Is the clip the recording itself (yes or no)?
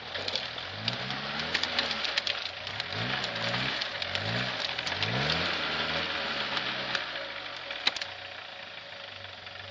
yes